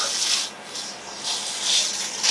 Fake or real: real